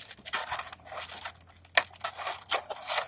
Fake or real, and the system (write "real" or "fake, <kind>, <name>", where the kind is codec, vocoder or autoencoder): real